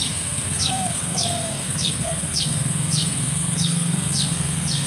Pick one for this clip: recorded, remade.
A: remade